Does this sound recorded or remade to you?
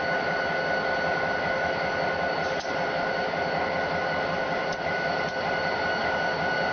recorded